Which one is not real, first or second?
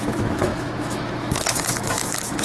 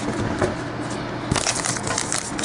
first